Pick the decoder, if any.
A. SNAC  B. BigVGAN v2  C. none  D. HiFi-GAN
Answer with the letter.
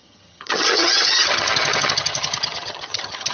D